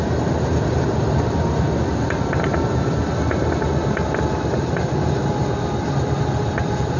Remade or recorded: recorded